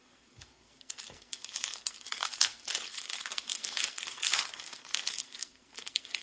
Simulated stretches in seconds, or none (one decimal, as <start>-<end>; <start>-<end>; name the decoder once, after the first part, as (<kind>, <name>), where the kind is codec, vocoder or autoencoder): 0.0-6.2 (codec, SNAC)